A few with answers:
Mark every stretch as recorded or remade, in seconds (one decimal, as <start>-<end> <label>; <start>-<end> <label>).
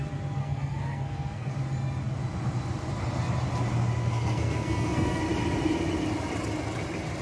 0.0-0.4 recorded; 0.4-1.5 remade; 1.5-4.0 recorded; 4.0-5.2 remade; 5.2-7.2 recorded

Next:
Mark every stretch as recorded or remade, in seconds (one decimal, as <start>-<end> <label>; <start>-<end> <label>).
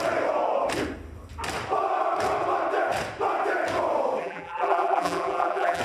0.0-4.2 recorded; 4.2-5.8 remade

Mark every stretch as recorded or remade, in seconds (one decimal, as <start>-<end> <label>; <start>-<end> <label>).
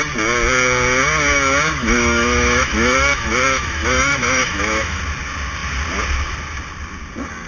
0.0-1.8 recorded; 1.8-5.0 remade; 5.0-7.5 recorded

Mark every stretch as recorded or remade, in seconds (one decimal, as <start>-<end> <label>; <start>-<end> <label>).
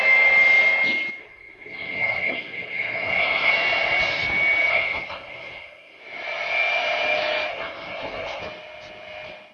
0.0-1.2 recorded; 1.2-3.5 remade; 3.5-4.7 recorded; 4.7-6.0 remade; 6.0-7.5 recorded; 7.5-8.4 remade; 8.4-9.5 recorded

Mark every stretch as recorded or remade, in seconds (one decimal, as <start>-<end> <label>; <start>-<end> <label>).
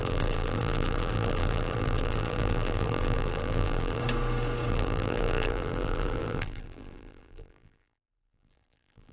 0.0-4.0 remade; 4.0-4.7 recorded; 4.7-9.1 remade